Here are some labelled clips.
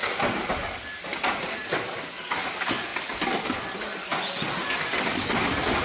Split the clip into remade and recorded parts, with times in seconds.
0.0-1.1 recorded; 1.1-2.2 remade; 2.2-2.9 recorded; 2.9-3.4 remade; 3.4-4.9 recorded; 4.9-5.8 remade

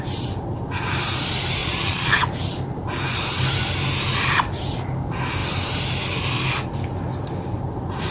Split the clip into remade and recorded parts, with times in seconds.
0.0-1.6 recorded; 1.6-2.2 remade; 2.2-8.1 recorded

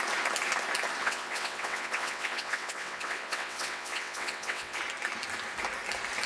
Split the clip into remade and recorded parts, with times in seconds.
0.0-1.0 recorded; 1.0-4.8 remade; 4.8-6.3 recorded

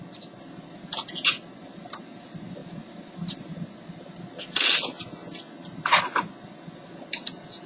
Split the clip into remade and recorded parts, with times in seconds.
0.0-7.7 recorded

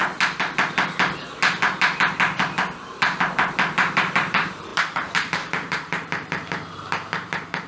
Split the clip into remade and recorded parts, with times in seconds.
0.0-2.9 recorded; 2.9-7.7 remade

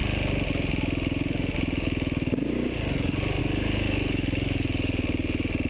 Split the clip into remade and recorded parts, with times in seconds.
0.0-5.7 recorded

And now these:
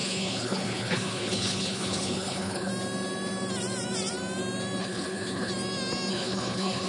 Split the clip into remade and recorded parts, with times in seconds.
0.0-2.7 remade; 2.7-4.8 recorded; 4.8-5.5 remade; 5.5-6.1 recorded; 6.1-6.9 remade